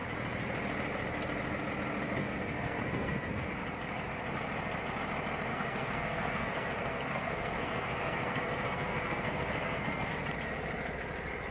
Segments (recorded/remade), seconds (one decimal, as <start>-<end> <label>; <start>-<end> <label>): 0.0-2.2 recorded; 2.2-3.5 remade; 3.5-5.5 recorded; 5.5-10.1 remade; 10.1-11.5 recorded